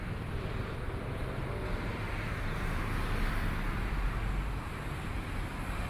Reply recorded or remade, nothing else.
recorded